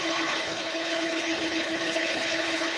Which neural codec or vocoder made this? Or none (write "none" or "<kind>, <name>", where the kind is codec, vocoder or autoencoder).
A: codec, HILCodec